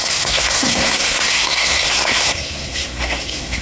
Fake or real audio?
fake